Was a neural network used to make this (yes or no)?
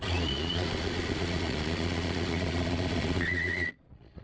yes